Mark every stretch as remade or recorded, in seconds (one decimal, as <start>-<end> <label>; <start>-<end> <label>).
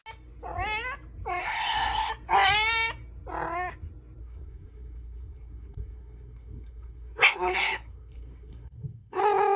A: 0.0-1.4 recorded; 1.4-2.1 remade; 2.1-4.2 recorded; 4.2-9.2 remade; 9.2-9.6 recorded